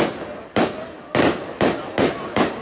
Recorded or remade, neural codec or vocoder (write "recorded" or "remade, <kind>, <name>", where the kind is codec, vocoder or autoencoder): recorded